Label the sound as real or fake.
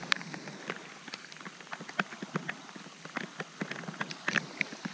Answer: real